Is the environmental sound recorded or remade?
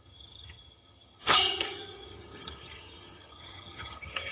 remade